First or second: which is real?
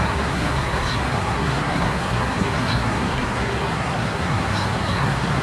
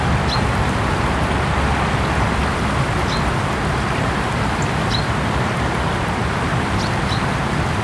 second